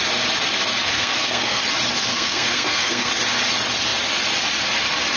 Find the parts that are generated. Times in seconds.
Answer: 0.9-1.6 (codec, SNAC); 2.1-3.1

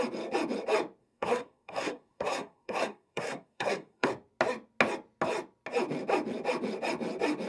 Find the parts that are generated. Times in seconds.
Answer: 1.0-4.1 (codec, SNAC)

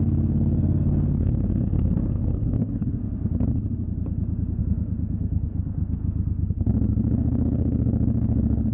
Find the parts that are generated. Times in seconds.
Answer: 0.0-3.0 (codec, SNAC); 4.6-6.0; 6.5-8.7